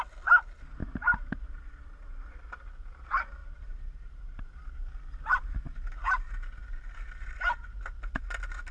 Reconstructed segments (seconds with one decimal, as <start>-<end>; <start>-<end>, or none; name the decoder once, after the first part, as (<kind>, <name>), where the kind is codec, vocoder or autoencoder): 0.8-2.3 (vocoder, BigVGAN v2); 3.4-4.4; 6.6-7.7